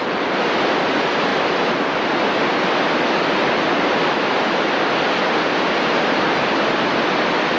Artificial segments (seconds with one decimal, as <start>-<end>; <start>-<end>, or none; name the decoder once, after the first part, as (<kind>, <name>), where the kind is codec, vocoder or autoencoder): none